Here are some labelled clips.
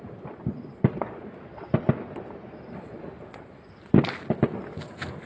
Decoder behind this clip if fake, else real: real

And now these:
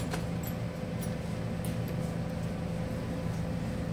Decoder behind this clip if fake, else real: real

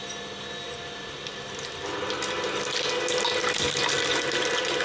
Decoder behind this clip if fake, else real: real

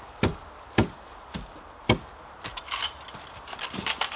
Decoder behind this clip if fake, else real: fake, vocoder, BigVGAN v2